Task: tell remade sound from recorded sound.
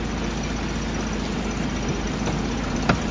recorded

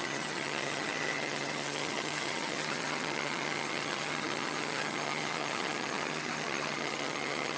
remade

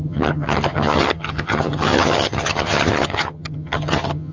remade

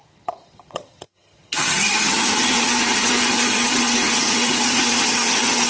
remade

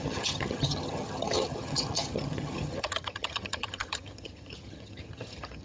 remade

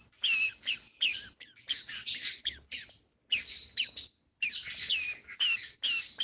recorded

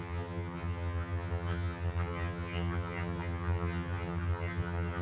remade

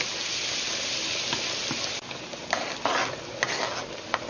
recorded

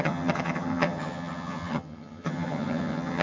remade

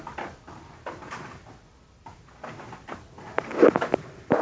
recorded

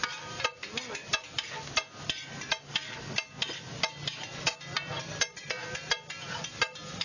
recorded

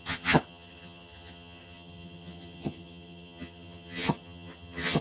remade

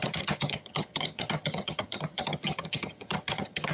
remade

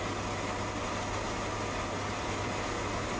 recorded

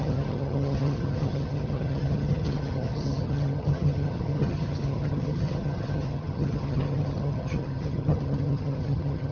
remade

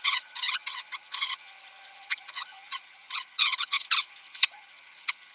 remade